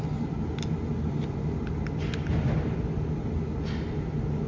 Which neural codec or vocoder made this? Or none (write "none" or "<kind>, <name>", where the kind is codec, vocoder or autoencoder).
none